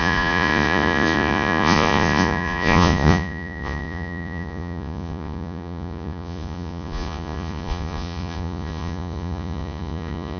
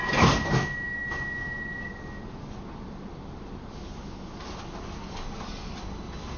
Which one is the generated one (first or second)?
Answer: first